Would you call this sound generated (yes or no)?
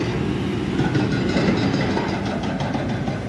no